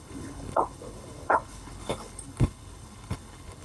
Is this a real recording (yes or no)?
no